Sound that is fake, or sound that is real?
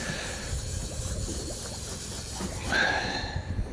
fake